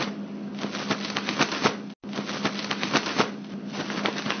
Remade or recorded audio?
recorded